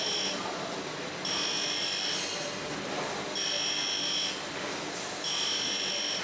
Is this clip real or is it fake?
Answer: real